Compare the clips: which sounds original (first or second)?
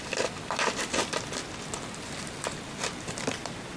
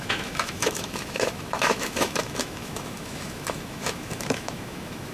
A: first